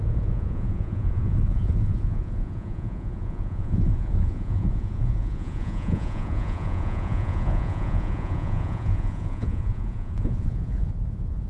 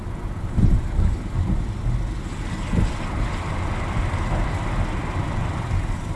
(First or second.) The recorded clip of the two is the second